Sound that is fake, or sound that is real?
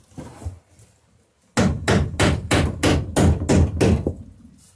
real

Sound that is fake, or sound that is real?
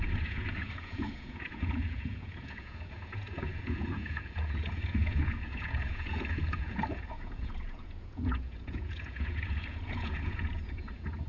fake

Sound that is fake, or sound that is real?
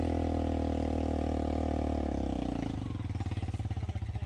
real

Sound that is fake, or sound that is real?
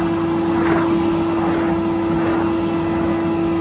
real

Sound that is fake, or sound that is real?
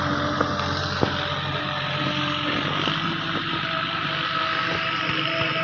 real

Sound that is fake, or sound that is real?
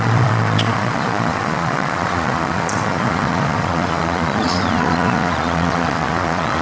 fake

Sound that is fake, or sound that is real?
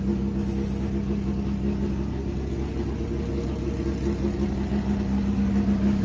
real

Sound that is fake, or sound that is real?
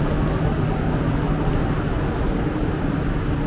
real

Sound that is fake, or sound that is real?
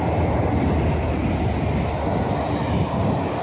real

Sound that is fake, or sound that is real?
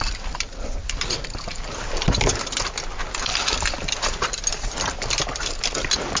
real